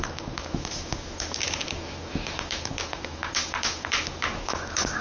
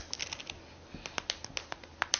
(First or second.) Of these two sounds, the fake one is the first